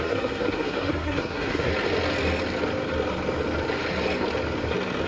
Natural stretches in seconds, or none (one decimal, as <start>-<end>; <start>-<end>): 1.7-5.1